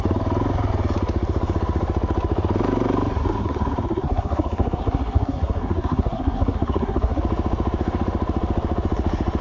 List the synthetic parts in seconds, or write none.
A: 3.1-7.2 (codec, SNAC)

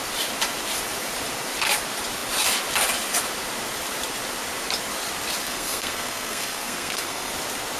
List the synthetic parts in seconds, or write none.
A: 5.4-7.3 (codec, SNAC)

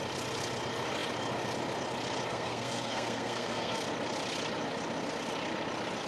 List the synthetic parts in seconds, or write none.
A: 2.3-3.8 (codec, SNAC)

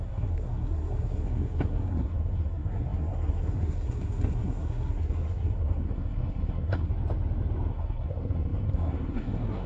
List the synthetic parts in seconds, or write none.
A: 0.0-6.9 (codec, SNAC); 7.7-9.7

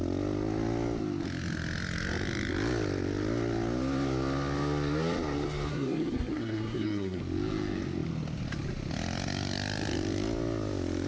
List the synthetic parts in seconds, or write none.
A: 5.7-7.2 (codec, SNAC)

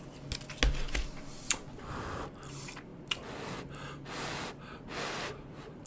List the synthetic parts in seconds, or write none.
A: none